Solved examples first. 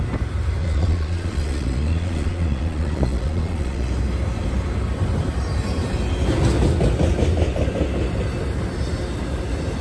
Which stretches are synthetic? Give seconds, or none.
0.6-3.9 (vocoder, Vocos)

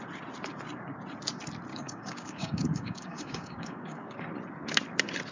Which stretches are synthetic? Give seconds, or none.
1.7-4.2 (codec, DAC)

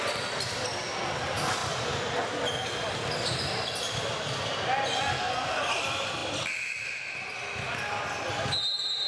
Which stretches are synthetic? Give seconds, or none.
5.1-5.6 (codec, SNAC)

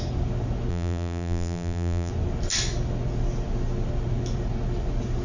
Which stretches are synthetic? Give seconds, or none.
0.7-2.1 (vocoder, BigVGAN v2)

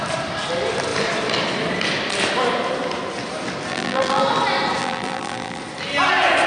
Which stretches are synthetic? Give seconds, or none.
3.7-4.2 (vocoder, BigVGAN v2); 4.8-5.6

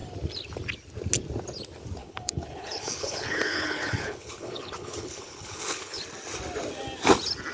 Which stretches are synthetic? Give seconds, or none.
2.0-6.0 (codec, HILCodec)